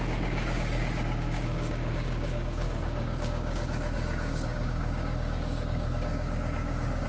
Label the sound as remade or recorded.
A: remade